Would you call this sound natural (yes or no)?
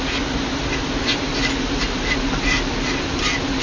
yes